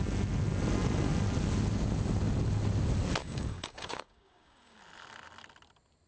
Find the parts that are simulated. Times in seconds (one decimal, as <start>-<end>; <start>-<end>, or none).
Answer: 3.2-4.8